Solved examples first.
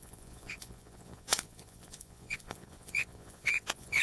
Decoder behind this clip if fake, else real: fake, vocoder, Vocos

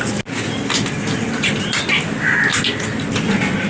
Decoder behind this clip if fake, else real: real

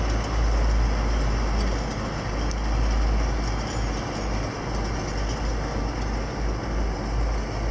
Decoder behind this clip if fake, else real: real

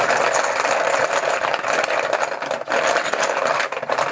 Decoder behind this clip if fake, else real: real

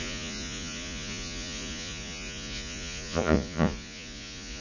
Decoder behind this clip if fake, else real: fake, vocoder, Vocos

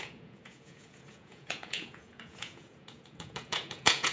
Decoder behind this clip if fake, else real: fake, vocoder, Vocos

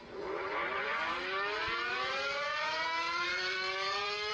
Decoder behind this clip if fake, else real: fake, vocoder, Vocos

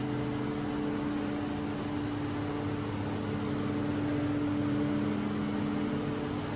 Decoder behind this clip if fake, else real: real